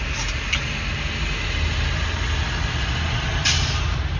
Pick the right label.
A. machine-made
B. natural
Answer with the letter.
B